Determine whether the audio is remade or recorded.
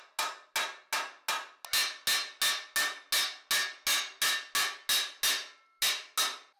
recorded